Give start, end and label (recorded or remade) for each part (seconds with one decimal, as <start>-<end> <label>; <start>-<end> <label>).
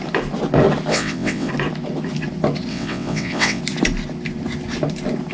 0.0-0.9 recorded; 0.9-1.5 remade; 1.5-2.7 recorded; 2.7-3.6 remade; 3.6-5.3 recorded